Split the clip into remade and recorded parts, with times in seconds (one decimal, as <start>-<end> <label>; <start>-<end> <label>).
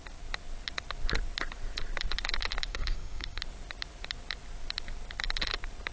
0.0-2.7 recorded; 2.7-3.4 remade; 3.4-5.9 recorded